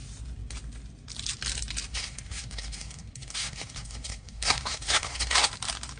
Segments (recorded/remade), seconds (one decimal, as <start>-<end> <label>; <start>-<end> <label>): 0.0-1.9 recorded; 1.9-5.5 remade; 5.5-6.0 recorded

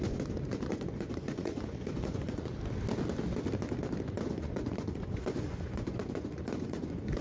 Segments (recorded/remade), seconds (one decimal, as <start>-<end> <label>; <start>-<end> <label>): 0.0-2.5 remade; 2.5-4.2 recorded; 4.2-7.2 remade